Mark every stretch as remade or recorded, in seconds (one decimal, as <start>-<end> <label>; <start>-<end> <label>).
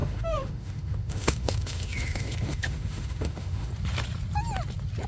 0.0-3.7 remade; 3.7-5.1 recorded